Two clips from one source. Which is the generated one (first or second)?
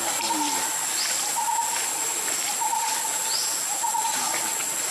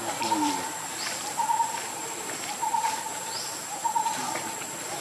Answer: second